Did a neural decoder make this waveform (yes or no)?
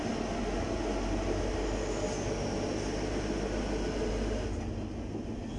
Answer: no